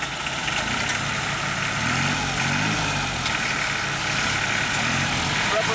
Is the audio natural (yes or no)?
yes